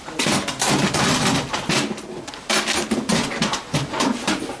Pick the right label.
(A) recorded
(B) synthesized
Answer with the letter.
A